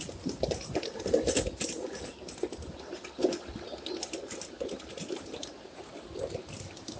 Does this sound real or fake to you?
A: real